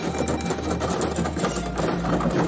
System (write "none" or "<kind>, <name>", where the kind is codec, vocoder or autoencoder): none